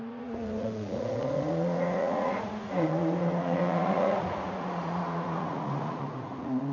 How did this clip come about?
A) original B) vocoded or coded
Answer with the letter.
B